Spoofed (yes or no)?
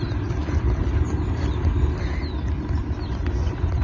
no